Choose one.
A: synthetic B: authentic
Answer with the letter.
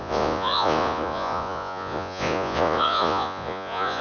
A